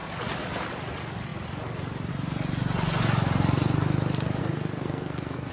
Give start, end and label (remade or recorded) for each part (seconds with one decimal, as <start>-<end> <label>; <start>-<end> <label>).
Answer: 0.0-4.4 recorded; 4.4-5.5 remade